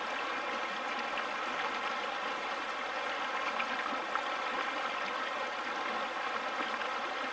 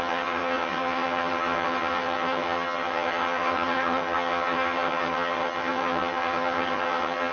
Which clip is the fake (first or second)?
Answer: second